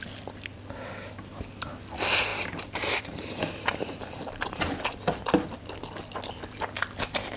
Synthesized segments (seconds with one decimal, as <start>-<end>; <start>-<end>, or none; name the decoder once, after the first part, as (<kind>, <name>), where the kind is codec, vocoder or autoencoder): 2.3-4.8 (vocoder, BigVGAN v2)

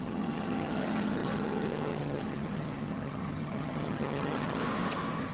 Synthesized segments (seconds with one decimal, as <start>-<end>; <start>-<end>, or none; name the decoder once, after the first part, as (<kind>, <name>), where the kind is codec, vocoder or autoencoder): 0.0-4.6 (vocoder, HiFi-GAN)

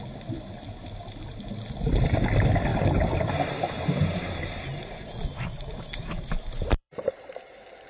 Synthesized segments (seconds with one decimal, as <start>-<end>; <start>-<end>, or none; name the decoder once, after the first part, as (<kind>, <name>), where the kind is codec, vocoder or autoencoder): 2.7-7.4 (vocoder, BigVGAN v2)

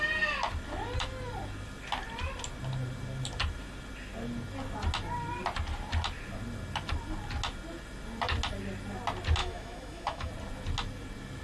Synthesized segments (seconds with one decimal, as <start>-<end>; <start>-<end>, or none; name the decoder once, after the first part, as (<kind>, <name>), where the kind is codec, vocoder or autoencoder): 9.4-10.3 (autoencoder, DAC-VAE)

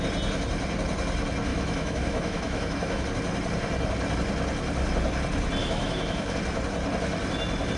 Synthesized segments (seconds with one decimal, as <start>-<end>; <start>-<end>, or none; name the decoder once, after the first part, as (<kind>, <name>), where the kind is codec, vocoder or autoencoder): 1.5-3.0 (autoencoder, DAC-VAE); 5.6-6.3

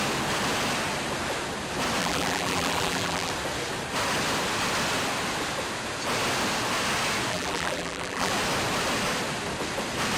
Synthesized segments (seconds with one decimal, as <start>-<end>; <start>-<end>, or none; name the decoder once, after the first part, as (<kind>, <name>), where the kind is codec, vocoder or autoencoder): 2.0-3.3 (vocoder, BigVGAN v2); 7.3-8.3

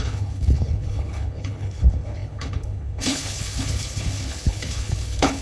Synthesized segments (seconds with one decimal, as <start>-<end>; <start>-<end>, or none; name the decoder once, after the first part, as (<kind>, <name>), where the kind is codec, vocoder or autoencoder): 0.0-5.4 (codec, HILCodec)